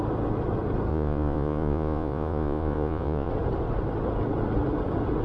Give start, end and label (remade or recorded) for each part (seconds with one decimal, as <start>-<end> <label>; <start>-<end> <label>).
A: 0.0-0.9 recorded; 0.9-3.3 remade; 3.3-5.2 recorded